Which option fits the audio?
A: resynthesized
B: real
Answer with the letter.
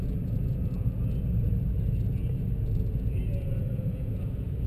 A